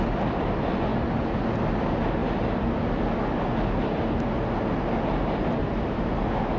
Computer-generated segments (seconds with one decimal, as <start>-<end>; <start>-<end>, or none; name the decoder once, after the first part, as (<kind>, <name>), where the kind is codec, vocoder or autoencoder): none